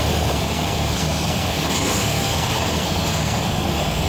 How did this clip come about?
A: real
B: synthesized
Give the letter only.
B